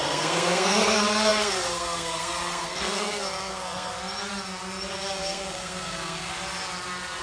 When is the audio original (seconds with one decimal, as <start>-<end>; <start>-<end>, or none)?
3.9-4.9; 6.3-7.2

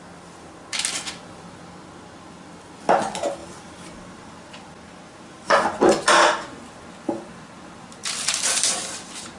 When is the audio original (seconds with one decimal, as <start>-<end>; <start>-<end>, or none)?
0.0-3.4; 5.8-8.0; 8.7-9.4

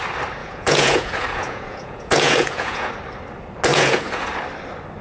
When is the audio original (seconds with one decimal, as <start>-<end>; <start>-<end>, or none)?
0.0-0.4; 2.9-3.7; 4.3-5.0

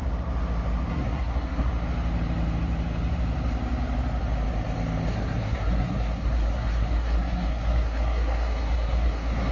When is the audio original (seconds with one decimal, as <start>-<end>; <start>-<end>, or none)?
0.0-0.9; 1.7-5.1

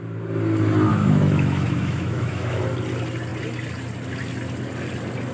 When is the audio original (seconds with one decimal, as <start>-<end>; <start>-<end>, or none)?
0.0-0.9; 2.6-5.3

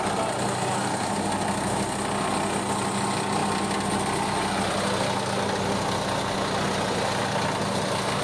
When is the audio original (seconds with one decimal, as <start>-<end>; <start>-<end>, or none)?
0.0-8.2

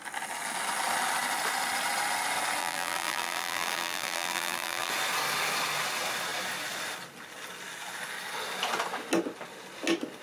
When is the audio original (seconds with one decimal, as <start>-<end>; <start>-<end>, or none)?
0.0-2.6; 4.9-10.2

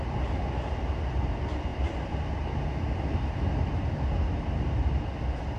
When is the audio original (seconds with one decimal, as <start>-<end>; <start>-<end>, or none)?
0.0-1.7; 2.3-5.6